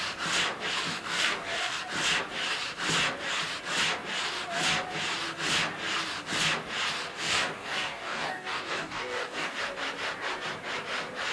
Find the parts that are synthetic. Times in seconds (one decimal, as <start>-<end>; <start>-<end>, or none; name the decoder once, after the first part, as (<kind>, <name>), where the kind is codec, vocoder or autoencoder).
0.9-1.8 (codec, DAC); 7.1-9.6